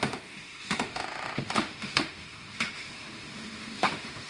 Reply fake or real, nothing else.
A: fake